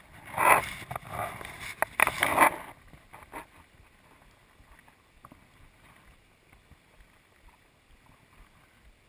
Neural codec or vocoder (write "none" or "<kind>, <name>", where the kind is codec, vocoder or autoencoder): none